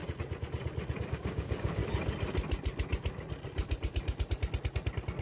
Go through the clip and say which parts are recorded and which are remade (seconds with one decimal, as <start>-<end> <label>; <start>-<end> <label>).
0.0-1.0 recorded; 1.0-1.8 remade; 1.8-5.2 recorded